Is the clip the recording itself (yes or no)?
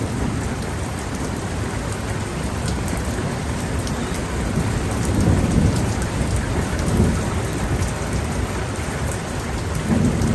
no